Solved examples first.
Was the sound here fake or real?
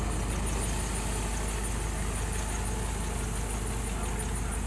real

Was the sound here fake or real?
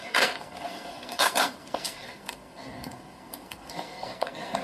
fake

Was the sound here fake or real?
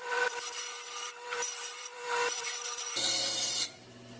fake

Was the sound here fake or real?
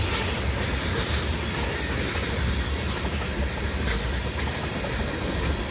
real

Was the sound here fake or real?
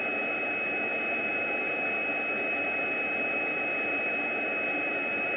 real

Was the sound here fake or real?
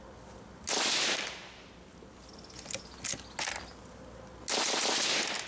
real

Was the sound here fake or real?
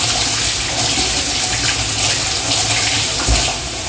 real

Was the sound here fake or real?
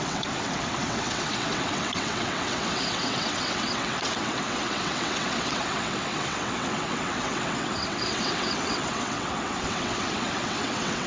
fake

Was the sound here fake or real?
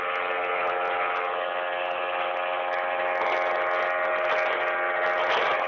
real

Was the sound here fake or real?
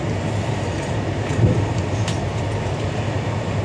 real